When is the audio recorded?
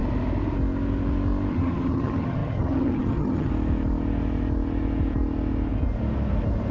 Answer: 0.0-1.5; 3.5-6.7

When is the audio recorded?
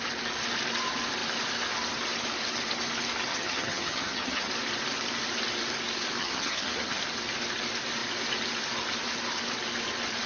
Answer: 0.0-3.3; 4.5-6.2; 7.0-10.3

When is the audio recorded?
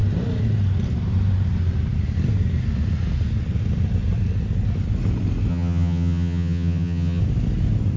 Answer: 0.0-5.5; 7.2-8.0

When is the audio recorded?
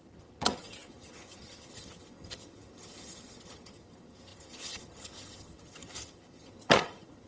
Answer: none